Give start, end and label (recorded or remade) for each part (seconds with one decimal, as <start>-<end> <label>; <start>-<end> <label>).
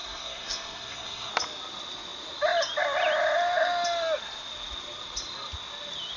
0.0-1.3 remade; 1.3-6.2 recorded